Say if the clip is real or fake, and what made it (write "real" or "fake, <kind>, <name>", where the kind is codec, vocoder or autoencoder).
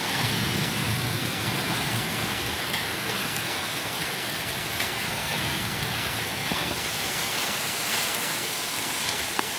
fake, codec, SNAC